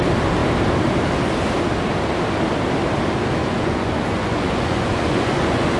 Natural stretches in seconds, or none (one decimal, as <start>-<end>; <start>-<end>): 0.0-3.4